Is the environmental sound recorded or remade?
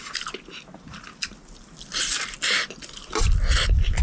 recorded